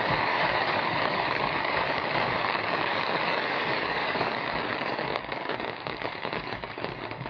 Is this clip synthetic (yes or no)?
yes